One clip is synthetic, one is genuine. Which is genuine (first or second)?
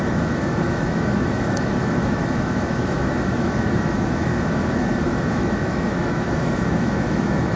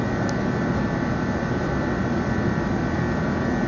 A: second